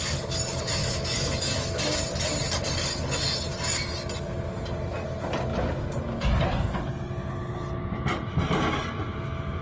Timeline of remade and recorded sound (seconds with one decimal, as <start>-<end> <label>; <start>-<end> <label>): 0.0-0.8 recorded; 0.8-1.8 remade; 1.8-9.6 recorded